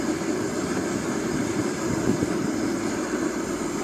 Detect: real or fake real